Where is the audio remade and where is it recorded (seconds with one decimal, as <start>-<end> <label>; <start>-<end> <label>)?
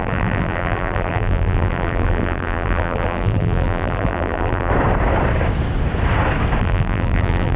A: 0.0-4.7 remade; 4.7-6.6 recorded; 6.6-7.6 remade